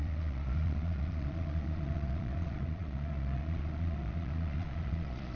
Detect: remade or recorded remade